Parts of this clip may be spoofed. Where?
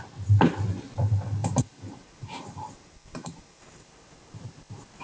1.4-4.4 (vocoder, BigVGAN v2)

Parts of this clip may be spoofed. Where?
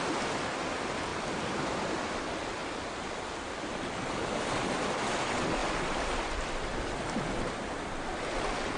1.1-2.0 (vocoder, BigVGAN v2)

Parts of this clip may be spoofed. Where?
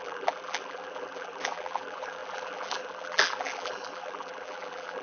0.0-5.0 (vocoder, BigVGAN v2)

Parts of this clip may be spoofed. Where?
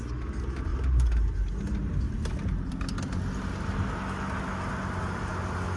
none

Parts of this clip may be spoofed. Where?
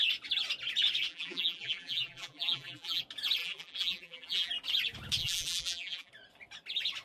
1.1-3.0 (vocoder, BigVGAN v2); 3.4-4.5; 5.2-6.1